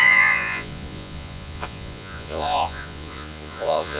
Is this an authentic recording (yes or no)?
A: no